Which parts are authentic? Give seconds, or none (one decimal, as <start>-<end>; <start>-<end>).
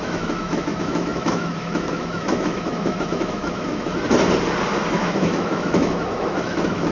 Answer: 3.9-4.9